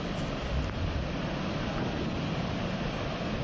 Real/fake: real